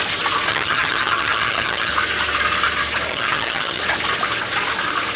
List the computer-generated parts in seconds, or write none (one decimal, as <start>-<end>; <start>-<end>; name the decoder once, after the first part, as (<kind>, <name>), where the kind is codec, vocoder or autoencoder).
0.5-1.9 (vocoder, HiFi-GAN); 3.1-3.8

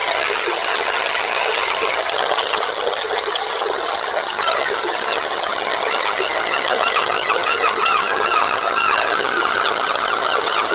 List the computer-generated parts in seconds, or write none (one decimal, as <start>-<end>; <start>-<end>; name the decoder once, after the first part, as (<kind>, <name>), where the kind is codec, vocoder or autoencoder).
0.0-10.7 (vocoder, HiFi-GAN)

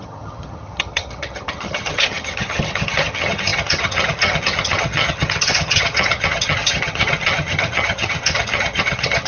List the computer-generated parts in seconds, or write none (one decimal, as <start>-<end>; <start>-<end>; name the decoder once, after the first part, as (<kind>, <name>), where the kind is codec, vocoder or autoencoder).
0.0-9.3 (vocoder, HiFi-GAN)